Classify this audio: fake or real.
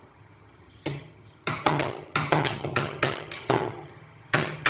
fake